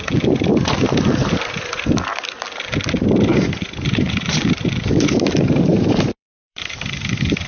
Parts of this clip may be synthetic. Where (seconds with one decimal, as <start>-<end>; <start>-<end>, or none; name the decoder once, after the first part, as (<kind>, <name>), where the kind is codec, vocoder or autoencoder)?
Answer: 0.5-1.8 (vocoder, BigVGAN v2); 3.3-4.7; 5.7-6.9